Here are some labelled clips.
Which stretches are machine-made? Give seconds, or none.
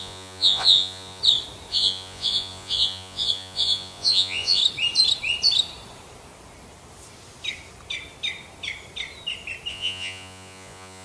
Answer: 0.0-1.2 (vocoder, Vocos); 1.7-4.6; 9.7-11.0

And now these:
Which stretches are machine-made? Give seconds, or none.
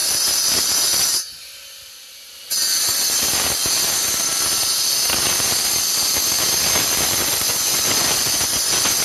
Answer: 7.2-9.0 (vocoder, Vocos)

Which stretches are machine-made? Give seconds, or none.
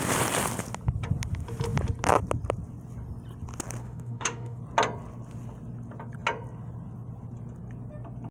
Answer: 3.8-4.6 (autoencoder, DAC-VAE)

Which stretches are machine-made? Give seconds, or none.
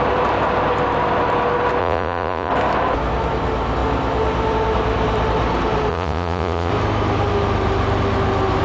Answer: 1.8-2.5 (vocoder, Vocos); 5.9-6.7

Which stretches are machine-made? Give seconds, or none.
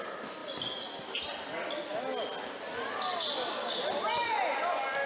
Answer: none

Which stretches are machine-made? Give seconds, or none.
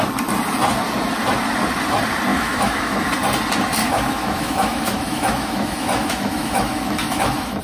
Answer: 2.3-3.1 (autoencoder, DAC-VAE); 3.8-7.6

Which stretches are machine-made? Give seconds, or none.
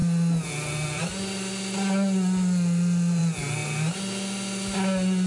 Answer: none